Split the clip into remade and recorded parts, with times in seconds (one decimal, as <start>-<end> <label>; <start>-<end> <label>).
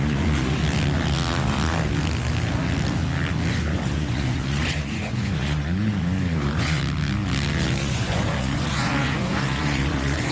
0.0-0.6 remade; 0.6-3.5 recorded; 3.5-6.8 remade; 6.8-7.8 recorded; 7.8-10.3 remade